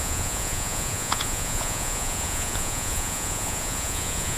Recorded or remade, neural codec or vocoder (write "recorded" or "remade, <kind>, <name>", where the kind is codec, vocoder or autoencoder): remade, vocoder, Vocos